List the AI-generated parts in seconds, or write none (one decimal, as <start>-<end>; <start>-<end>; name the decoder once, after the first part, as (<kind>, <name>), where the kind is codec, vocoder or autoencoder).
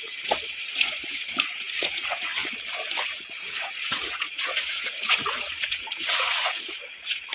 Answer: 0.0-2.3 (vocoder, Vocos); 2.9-7.3